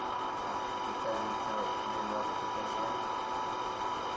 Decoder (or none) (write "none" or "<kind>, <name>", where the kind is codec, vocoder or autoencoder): none